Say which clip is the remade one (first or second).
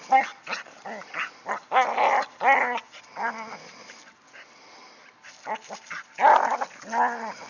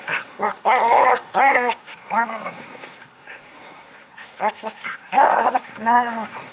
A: second